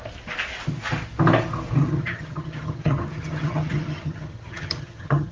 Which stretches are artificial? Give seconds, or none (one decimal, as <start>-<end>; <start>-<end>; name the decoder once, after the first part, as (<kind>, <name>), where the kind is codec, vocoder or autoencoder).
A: 1.8-5.3 (vocoder, HiFi-GAN)